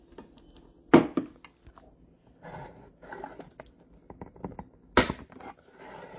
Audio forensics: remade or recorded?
recorded